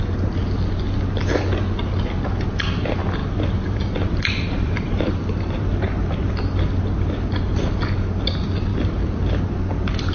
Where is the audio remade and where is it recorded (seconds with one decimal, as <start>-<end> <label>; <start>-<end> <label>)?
0.0-3.2 recorded; 3.2-6.3 remade; 6.3-8.7 recorded; 8.7-9.4 remade; 9.4-10.1 recorded